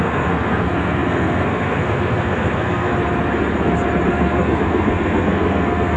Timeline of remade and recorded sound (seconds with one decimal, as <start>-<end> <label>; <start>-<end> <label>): 0.0-2.9 remade; 2.9-4.1 recorded; 4.1-6.0 remade